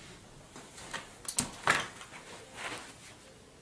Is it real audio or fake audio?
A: real